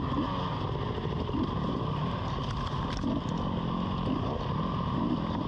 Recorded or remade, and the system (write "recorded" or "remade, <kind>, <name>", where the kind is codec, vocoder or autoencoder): recorded